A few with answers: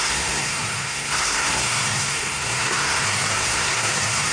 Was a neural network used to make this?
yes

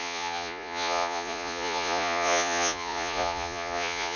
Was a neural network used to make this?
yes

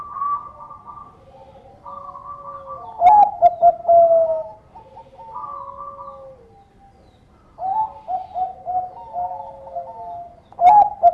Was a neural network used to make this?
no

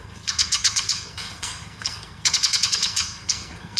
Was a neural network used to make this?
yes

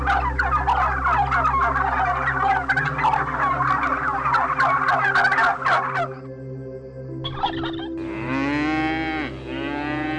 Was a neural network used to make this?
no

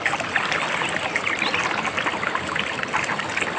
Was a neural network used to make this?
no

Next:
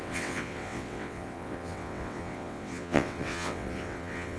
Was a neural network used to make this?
yes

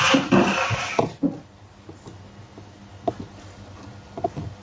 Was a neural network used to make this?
no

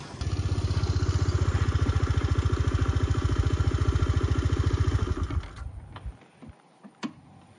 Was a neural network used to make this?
no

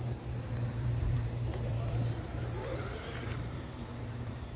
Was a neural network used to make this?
yes